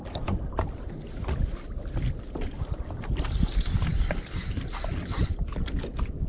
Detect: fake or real real